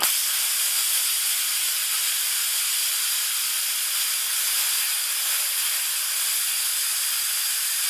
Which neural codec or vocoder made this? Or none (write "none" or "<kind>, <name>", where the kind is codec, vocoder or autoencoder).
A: none